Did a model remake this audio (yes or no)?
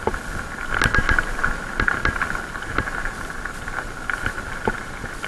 no